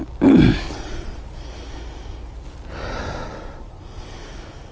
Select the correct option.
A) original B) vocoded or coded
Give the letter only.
A